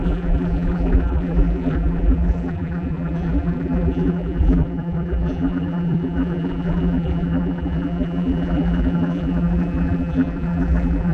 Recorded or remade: remade